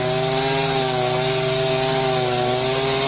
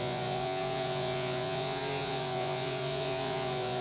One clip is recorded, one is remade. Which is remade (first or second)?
second